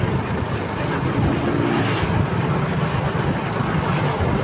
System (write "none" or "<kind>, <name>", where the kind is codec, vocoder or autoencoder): none